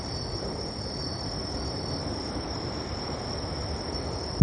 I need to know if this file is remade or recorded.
recorded